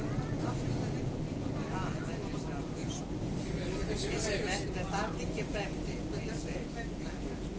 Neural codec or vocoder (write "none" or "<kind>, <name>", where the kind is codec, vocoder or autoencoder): none